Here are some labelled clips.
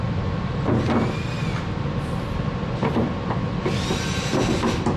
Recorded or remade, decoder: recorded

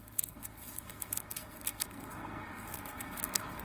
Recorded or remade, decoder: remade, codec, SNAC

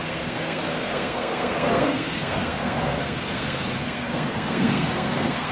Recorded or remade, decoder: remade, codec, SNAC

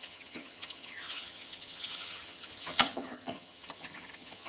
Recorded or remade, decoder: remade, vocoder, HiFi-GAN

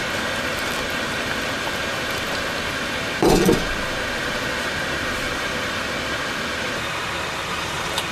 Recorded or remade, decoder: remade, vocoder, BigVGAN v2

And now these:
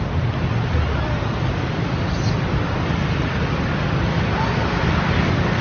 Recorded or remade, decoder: recorded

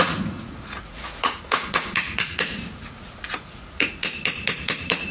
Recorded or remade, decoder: remade, vocoder, Vocos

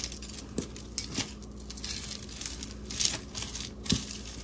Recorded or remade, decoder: recorded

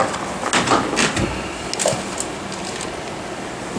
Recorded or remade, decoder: recorded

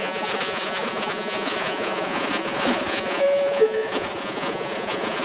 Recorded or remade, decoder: remade, vocoder, Vocos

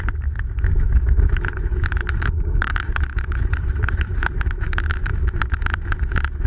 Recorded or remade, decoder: remade, autoencoder, DAC-VAE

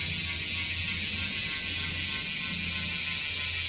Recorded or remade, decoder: recorded